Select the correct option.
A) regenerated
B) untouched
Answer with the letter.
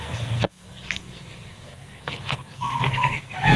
A